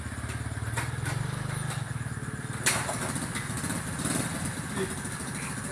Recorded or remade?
recorded